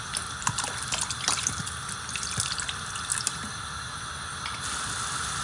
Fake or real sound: real